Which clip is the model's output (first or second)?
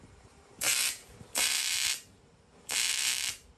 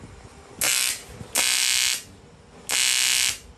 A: first